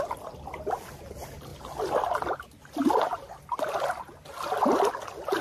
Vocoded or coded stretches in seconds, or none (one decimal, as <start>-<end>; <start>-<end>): none

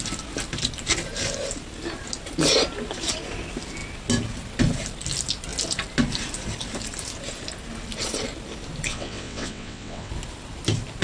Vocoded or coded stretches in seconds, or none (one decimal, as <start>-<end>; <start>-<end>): 8.9-10.1

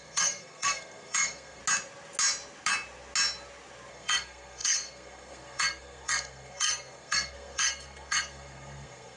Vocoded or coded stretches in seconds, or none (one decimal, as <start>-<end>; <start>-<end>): 0.0-1.6; 3.9-9.2

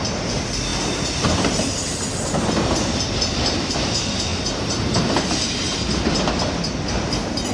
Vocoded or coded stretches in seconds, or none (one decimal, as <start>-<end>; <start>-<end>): 4.3-5.1